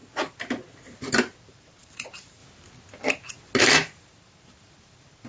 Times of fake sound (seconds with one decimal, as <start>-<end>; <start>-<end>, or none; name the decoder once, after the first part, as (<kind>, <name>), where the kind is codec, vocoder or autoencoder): 1.5-2.4 (vocoder, BigVGAN v2); 3.6-5.3